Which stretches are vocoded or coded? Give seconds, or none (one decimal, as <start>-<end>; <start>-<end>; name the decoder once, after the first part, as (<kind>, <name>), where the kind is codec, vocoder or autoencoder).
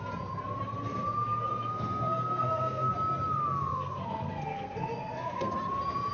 1.5-2.9 (codec, SNAC); 3.7-5.5